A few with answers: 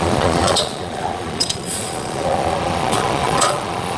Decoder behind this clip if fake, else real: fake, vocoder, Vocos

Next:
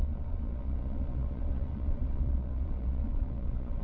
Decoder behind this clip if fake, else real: fake, vocoder, Vocos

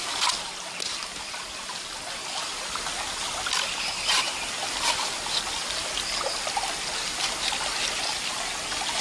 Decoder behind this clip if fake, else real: real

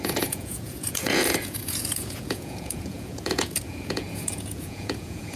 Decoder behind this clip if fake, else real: fake, vocoder, Vocos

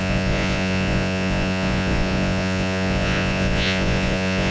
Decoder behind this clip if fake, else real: fake, vocoder, Vocos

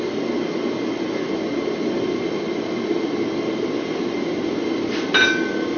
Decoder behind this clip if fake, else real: real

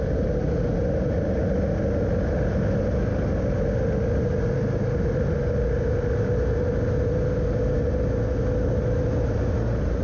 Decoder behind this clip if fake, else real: real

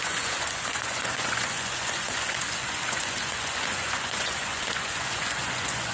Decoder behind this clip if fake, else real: fake, vocoder, Vocos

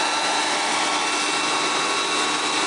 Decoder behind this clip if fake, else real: real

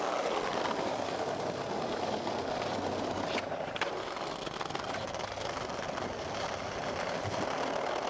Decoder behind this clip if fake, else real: real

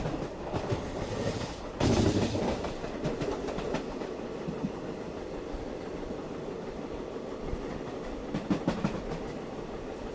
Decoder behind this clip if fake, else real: real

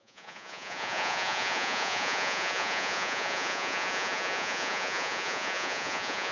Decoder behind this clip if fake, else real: fake, vocoder, Vocos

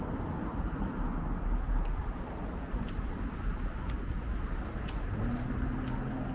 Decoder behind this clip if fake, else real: real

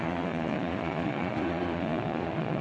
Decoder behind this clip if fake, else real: fake, vocoder, Vocos